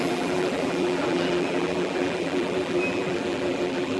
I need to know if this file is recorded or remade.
remade